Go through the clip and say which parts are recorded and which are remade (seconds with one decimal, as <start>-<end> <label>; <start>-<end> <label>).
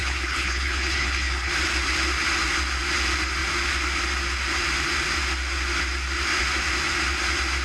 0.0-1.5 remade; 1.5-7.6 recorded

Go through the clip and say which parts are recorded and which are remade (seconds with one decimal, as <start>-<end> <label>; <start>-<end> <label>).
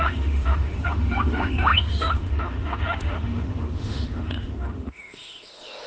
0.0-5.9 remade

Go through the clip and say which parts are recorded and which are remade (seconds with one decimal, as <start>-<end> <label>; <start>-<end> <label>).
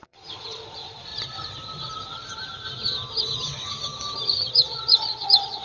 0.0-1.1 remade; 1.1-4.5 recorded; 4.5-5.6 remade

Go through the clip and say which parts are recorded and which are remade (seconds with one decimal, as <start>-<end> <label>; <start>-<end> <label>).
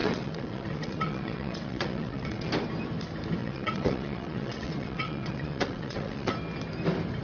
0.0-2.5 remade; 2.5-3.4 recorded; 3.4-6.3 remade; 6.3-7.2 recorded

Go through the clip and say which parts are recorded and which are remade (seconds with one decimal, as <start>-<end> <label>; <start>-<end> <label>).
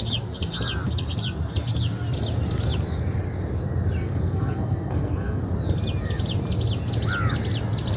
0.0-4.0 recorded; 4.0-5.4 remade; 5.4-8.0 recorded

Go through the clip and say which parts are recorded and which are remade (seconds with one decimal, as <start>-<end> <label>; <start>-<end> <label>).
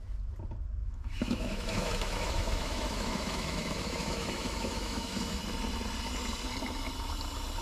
0.0-0.8 recorded; 0.8-5.4 remade; 5.4-7.6 recorded